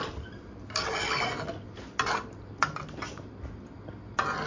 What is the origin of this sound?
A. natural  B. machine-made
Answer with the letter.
A